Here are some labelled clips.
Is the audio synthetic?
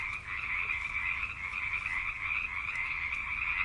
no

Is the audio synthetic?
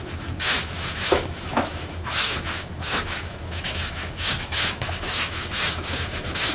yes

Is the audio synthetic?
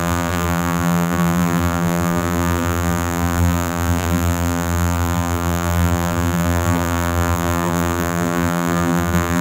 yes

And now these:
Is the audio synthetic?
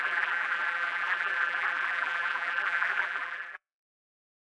yes